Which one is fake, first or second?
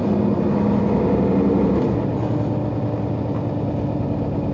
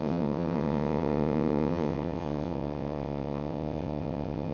second